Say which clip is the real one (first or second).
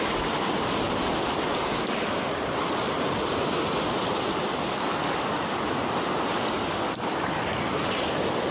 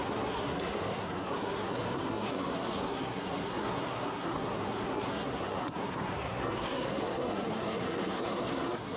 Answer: first